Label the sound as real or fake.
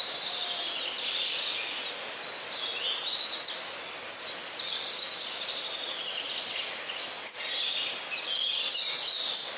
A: real